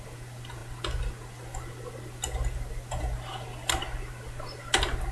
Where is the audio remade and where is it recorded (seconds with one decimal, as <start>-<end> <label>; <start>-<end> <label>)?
0.0-5.1 recorded